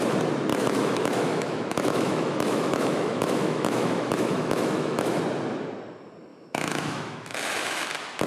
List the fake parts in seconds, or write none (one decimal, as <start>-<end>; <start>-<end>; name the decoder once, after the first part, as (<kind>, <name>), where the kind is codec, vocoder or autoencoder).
0.5-5.2 (autoencoder, DAC-VAE); 6.3-7.9

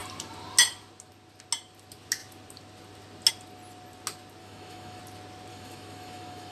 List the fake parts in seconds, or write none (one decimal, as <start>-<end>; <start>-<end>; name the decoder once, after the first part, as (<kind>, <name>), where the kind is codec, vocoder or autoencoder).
4.4-5.0 (autoencoder, DAC-VAE); 5.5-6.5

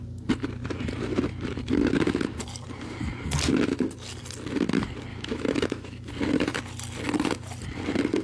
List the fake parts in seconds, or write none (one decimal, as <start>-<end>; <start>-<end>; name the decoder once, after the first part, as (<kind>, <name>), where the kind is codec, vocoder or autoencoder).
5.1-6.1 (autoencoder, DAC-VAE)

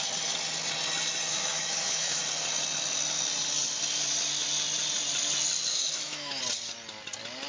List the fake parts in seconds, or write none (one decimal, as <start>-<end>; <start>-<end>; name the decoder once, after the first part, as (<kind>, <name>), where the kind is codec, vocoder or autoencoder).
1.3-2.2 (autoencoder, DAC-VAE); 5.7-6.4

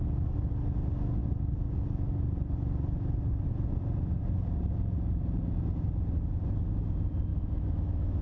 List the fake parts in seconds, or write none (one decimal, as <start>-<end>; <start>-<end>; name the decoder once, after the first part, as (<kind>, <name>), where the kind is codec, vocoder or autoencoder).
7.3-8.2 (autoencoder, DAC-VAE)